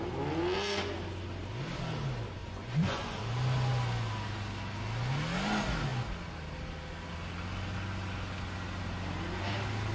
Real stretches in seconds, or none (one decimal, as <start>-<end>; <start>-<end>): 0.0-2.4; 3.2-9.9